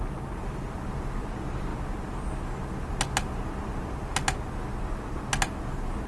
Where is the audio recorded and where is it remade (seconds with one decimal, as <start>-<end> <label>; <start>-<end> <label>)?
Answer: 0.0-6.1 recorded